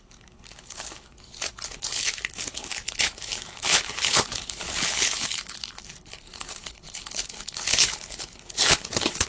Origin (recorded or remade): remade